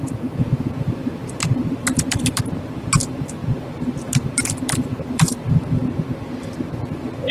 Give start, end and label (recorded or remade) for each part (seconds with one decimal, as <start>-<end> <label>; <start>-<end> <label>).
0.0-5.8 remade; 5.8-6.4 recorded; 6.4-7.3 remade